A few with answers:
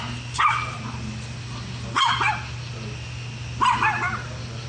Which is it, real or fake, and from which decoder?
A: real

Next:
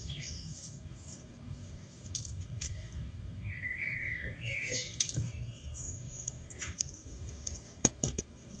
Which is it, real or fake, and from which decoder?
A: fake, codec, DAC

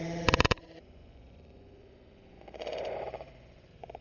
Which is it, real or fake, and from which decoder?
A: fake, vocoder, Vocos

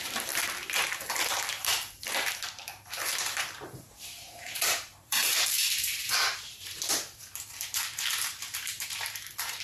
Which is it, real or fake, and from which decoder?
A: fake, vocoder, BigVGAN v2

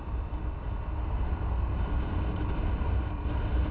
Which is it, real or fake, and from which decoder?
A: real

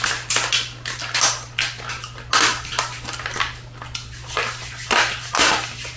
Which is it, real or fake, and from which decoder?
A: real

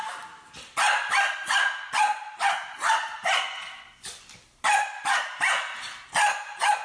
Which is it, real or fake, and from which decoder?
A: real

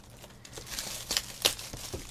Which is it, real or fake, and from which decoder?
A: fake, vocoder, BigVGAN v2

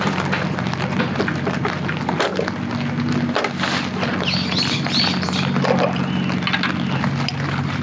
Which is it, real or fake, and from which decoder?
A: real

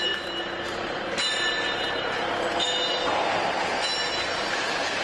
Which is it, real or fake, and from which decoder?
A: real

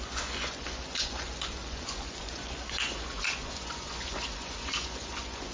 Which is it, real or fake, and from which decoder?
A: fake, vocoder, Vocos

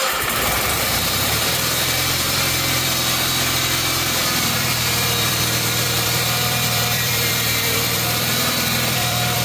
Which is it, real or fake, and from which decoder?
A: fake, vocoder, BigVGAN v2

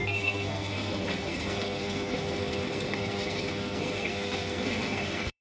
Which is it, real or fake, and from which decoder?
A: fake, codec, SNAC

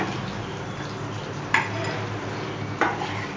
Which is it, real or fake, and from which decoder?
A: real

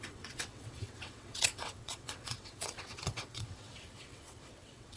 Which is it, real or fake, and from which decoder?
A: fake, vocoder, WaveNeXt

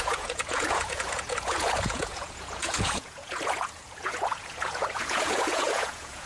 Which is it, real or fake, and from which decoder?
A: fake, vocoder, Vocos